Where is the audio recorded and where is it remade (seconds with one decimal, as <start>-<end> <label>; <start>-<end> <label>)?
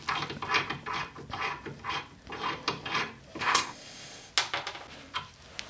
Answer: 0.0-3.4 recorded; 3.4-4.3 remade; 4.3-5.7 recorded